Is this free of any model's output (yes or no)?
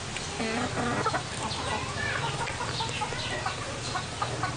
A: yes